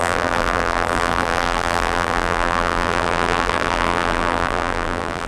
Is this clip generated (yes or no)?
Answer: yes